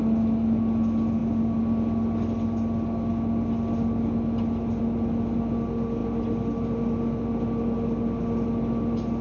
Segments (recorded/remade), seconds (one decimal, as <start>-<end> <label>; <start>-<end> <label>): 0.0-9.2 recorded